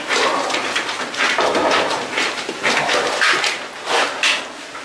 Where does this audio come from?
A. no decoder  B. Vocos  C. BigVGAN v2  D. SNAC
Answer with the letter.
C